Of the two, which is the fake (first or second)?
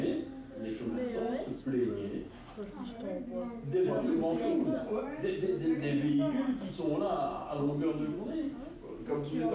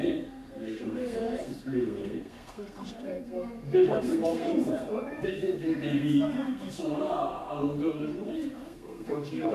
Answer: second